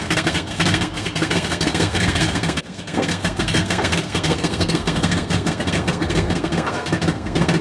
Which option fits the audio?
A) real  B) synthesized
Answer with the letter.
B